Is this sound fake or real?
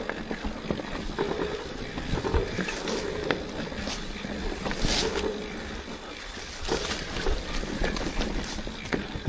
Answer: real